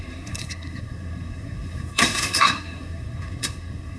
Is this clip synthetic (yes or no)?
yes